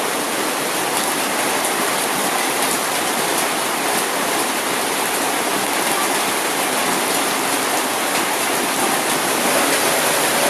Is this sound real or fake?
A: fake